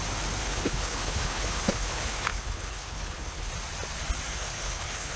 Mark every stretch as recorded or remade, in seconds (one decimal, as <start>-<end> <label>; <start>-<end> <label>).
0.0-0.4 recorded; 0.4-3.5 remade; 3.5-4.3 recorded; 4.3-5.2 remade

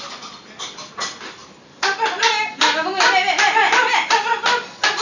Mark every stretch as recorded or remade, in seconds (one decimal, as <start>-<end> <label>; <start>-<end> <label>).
0.0-5.0 recorded

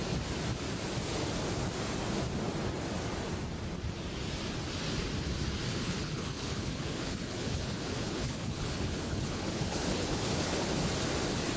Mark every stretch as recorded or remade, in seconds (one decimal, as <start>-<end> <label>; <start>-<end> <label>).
0.0-5.7 recorded; 5.7-10.7 remade; 10.7-11.6 recorded

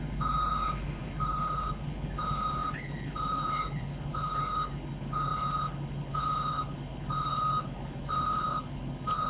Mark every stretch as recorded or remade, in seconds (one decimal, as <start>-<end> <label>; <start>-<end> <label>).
0.0-9.3 remade